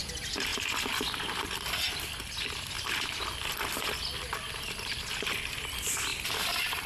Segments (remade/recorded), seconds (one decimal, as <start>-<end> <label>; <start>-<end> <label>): 0.0-6.9 recorded